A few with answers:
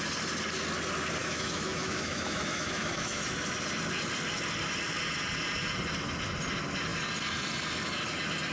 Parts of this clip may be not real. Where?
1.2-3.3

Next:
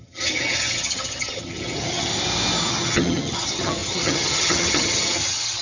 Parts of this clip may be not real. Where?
0.0-2.1; 2.7-5.6